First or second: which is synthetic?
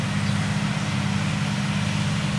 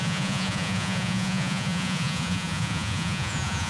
second